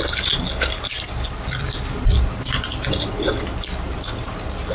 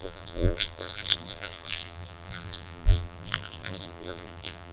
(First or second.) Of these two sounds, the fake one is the second